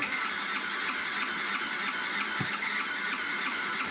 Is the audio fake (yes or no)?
no